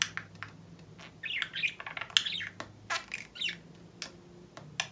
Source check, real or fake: real